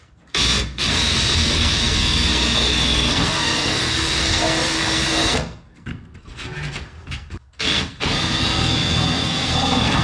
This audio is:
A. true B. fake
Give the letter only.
B